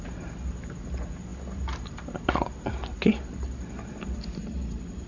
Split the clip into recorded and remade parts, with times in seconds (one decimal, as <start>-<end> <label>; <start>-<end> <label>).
0.0-5.1 recorded

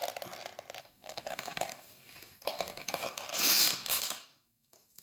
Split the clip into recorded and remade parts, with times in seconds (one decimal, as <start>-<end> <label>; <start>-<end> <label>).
0.0-0.8 recorded; 0.8-5.0 remade